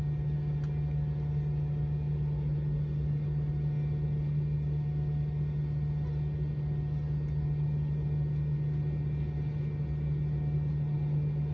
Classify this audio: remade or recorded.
recorded